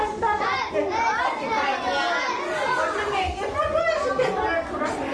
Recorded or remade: recorded